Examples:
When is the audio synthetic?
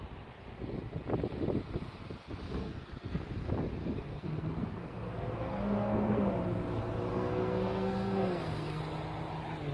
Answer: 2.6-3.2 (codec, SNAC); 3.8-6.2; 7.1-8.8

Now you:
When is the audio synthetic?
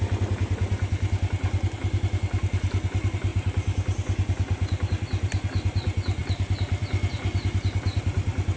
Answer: none